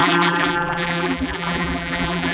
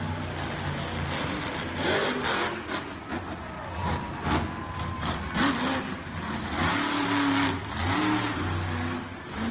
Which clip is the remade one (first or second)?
first